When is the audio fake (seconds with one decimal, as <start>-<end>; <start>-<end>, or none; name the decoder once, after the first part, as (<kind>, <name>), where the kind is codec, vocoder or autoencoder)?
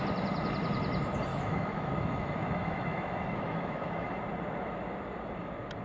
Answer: 1.3-4.2 (autoencoder, DAC-VAE)